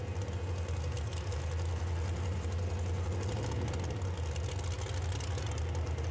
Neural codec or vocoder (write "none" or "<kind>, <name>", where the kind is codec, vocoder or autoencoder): none